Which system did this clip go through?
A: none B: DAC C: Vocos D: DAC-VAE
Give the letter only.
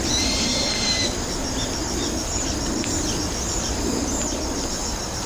A